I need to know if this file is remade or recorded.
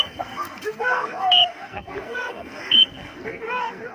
remade